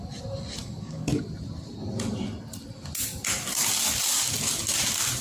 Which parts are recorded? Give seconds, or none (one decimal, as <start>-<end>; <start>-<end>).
0.0-0.6; 1.2-5.2